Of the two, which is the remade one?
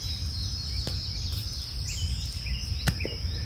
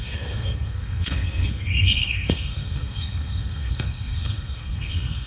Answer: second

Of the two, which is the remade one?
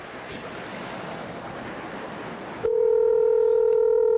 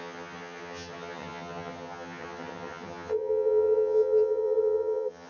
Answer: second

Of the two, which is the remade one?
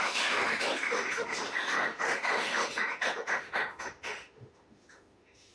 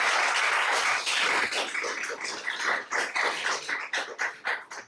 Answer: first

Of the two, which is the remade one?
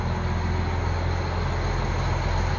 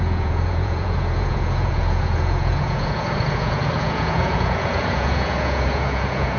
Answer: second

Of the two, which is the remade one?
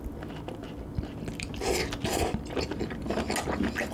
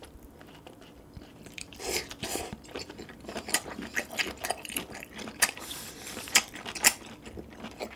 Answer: second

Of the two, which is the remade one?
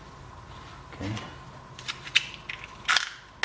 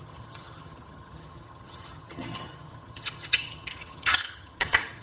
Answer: second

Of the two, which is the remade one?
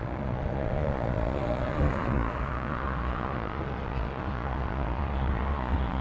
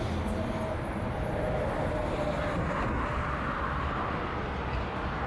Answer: first